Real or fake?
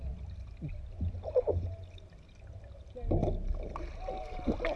real